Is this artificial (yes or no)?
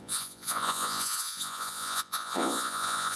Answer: yes